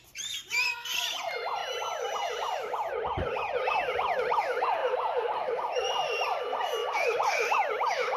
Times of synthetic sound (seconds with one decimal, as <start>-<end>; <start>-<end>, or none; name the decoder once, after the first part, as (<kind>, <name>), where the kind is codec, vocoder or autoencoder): 0.0-1.6 (vocoder, BigVGAN v2); 2.3-4.8; 5.5-6.8; 7.7-8.2